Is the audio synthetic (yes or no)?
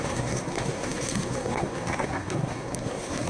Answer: yes